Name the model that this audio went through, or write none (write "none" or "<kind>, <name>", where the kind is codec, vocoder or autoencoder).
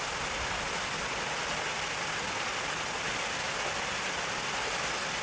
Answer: none